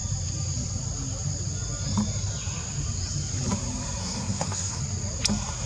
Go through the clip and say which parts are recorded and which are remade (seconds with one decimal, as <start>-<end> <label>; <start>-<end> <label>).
0.0-4.0 recorded; 4.0-4.8 remade; 4.8-5.7 recorded